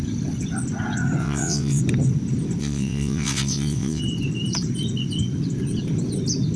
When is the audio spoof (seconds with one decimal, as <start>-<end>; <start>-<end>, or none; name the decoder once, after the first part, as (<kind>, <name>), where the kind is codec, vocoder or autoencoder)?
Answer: 1.2-1.8 (vocoder, WaveNeXt); 2.6-4.0